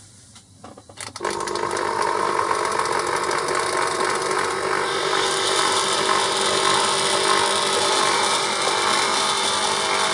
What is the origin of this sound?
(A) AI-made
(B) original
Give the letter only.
B